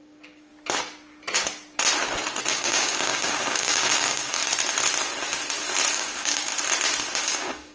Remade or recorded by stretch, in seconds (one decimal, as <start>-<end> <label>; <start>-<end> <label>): 0.0-0.5 remade; 0.5-2.5 recorded; 2.5-4.4 remade; 4.4-5.9 recorded; 5.9-6.5 remade; 6.5-7.2 recorded; 7.2-7.7 remade